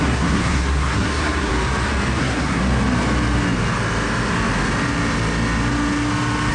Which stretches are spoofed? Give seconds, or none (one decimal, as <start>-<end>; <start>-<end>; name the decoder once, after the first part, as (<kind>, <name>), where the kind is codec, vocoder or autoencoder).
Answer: 0.0-1.5 (codec, SNAC); 2.2-2.6